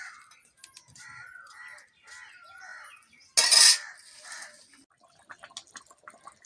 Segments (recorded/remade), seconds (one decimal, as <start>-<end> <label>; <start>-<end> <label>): 0.0-6.5 recorded